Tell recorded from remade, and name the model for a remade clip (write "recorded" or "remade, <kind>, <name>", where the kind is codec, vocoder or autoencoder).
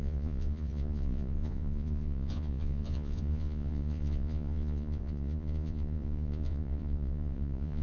remade, vocoder, Vocos